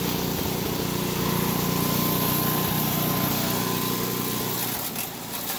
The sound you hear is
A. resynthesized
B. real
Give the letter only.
B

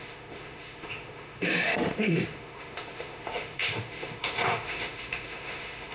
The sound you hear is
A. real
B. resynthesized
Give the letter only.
B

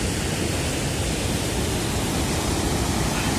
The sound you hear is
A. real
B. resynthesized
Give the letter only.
A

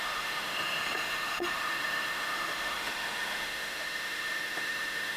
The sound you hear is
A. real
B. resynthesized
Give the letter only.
B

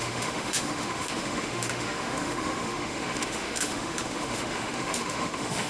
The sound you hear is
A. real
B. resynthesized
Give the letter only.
B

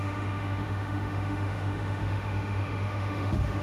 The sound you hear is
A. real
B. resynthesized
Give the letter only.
B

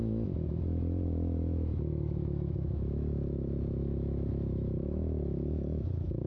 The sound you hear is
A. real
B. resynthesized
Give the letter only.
B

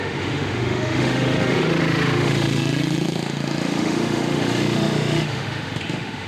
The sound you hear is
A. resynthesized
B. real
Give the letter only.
A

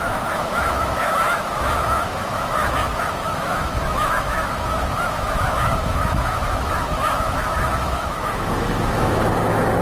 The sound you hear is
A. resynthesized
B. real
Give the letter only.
A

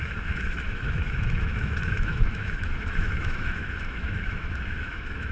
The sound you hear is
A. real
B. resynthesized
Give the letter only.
B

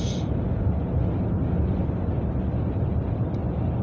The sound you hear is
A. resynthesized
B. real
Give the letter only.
B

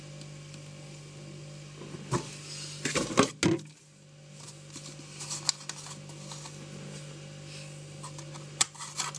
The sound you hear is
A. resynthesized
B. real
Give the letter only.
B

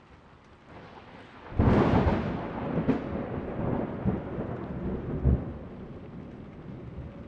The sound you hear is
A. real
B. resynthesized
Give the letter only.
A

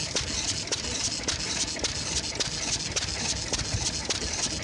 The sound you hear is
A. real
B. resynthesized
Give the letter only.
A